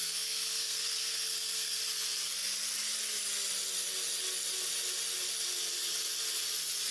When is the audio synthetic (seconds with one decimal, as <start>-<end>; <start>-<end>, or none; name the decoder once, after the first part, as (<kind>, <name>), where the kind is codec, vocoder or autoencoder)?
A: 0.0-1.8 (codec, SNAC)